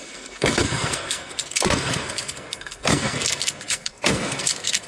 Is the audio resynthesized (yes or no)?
yes